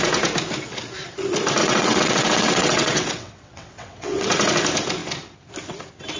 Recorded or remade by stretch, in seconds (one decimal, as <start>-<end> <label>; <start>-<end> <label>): 0.0-1.6 recorded; 1.6-4.3 remade; 4.3-6.2 recorded